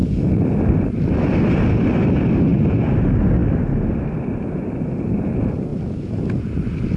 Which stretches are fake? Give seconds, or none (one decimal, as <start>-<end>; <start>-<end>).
none